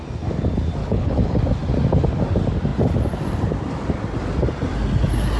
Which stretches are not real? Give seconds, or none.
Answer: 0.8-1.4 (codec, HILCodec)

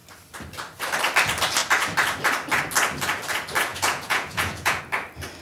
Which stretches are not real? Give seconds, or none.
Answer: 3.7-4.8 (vocoder, Vocos)

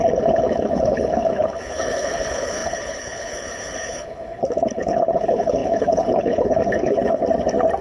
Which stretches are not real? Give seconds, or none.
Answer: 0.0-7.2 (codec, HILCodec)

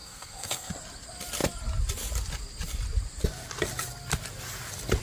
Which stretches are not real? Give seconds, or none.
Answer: 0.0-0.7 (codec, SNAC)

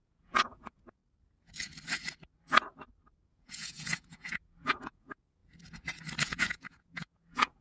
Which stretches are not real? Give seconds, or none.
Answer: 0.0-1.0 (vocoder, Vocos); 3.3-5.4; 6.2-7.6

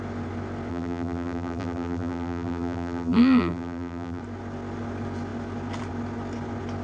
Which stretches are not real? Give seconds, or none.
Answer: 0.7-4.2 (vocoder, BigVGAN v2)

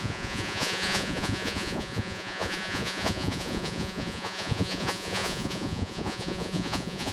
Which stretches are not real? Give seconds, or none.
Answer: 0.0-7.1 (vocoder, Vocos)